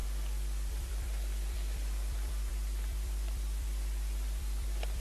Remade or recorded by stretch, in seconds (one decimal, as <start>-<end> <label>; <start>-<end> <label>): 0.0-0.7 recorded; 0.7-5.0 remade